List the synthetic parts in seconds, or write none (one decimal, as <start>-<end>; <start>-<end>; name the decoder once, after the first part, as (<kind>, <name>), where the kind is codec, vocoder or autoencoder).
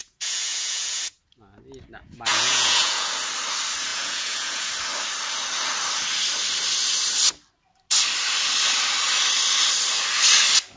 0.0-1.2 (vocoder, Vocos); 2.3-3.1; 3.9-4.7